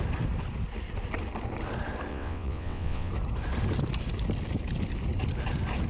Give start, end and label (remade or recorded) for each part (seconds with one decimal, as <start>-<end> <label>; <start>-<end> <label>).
0.0-2.1 recorded; 2.1-3.1 remade; 3.1-5.9 recorded